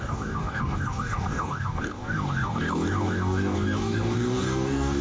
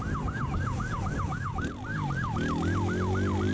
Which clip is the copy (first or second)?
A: first